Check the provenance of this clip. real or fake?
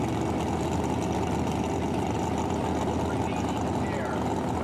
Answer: real